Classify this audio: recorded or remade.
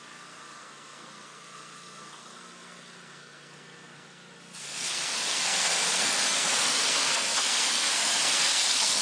remade